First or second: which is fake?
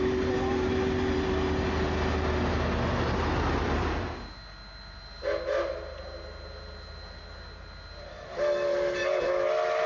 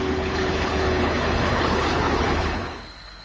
second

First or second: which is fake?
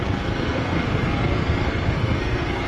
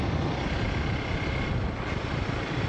first